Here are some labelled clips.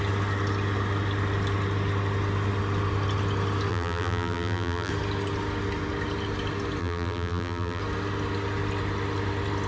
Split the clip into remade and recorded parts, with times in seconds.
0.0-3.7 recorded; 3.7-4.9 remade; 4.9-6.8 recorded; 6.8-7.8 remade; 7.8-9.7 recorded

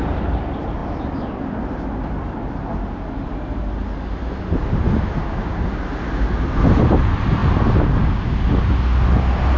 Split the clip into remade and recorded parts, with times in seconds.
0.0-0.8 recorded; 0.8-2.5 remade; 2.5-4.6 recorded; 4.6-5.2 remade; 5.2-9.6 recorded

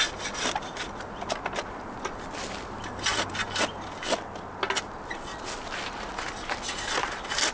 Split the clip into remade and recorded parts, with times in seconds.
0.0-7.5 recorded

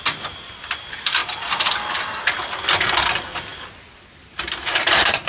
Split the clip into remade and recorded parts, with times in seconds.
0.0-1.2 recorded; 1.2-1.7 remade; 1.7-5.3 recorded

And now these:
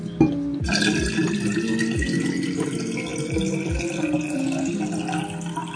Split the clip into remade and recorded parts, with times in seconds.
0.0-5.8 recorded

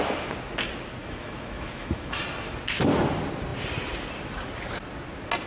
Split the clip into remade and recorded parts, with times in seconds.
0.0-1.0 recorded; 1.0-2.2 remade; 2.2-5.5 recorded

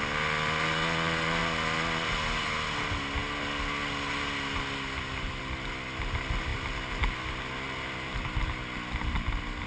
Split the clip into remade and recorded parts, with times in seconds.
0.0-9.7 recorded

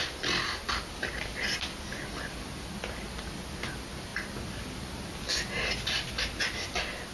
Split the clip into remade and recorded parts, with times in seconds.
0.0-7.1 recorded